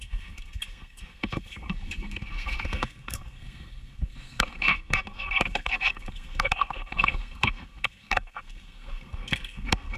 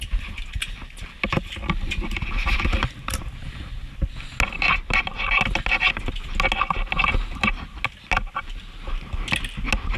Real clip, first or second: second